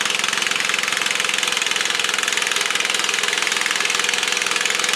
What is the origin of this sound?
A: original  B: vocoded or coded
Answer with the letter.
A